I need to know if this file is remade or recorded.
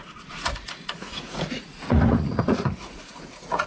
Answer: remade